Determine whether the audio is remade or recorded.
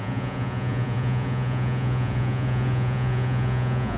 remade